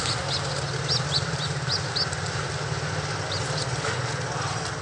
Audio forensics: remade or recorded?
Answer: recorded